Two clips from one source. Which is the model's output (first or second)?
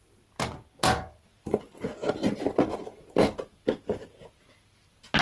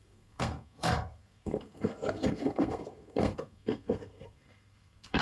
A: second